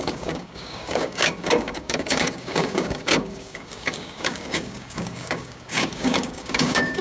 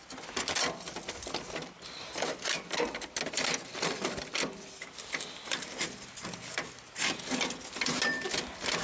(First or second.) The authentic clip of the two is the second